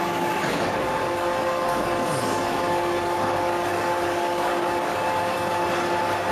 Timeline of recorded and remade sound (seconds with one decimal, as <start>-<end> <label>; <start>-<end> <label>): 0.0-5.6 remade; 5.6-6.3 recorded